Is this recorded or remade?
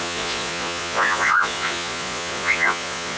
remade